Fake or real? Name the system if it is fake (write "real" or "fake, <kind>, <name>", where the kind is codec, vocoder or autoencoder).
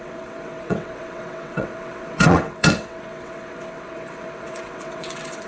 fake, vocoder, WaveNeXt